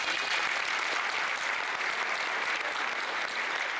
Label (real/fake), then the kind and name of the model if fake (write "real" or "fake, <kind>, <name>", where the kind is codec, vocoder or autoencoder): real